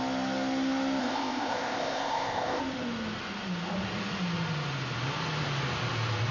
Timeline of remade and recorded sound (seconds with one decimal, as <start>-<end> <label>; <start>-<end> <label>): 0.0-1.0 recorded; 1.0-2.6 remade; 2.6-6.3 recorded